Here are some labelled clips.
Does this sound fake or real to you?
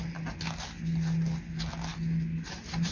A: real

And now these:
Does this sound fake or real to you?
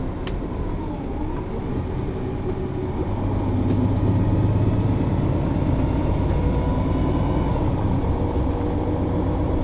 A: real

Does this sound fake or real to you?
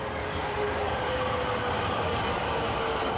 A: fake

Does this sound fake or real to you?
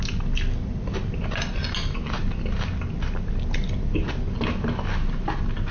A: real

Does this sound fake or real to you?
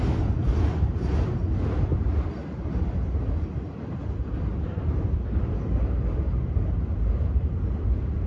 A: real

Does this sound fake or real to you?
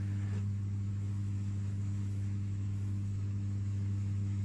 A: fake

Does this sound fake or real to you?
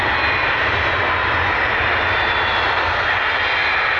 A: real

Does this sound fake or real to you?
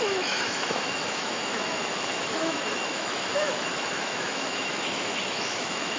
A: fake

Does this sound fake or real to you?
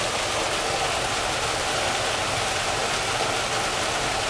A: real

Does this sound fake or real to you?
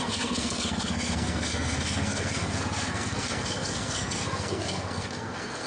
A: fake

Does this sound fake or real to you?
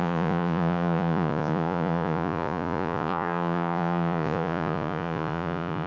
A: fake